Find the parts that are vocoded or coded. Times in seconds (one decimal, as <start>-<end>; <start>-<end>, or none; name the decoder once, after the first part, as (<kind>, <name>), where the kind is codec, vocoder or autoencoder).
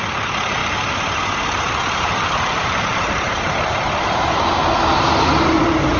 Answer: 0.6-4.2 (vocoder, BigVGAN v2)